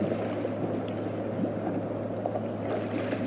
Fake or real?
real